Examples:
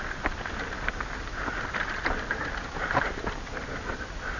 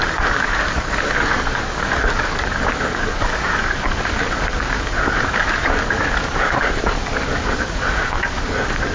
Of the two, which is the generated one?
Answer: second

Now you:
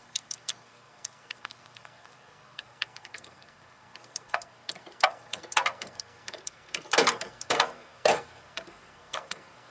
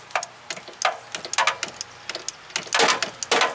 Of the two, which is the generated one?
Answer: first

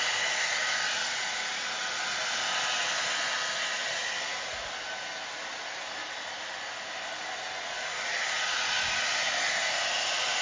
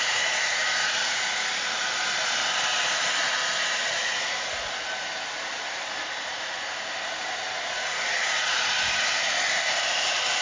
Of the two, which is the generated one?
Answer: second